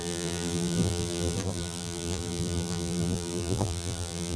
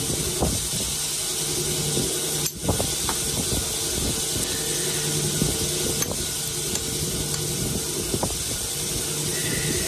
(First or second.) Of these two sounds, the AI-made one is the first